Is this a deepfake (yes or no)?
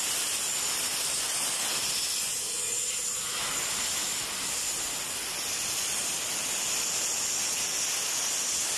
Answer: no